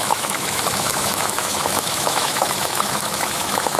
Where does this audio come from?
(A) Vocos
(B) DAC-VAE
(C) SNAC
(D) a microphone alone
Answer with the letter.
B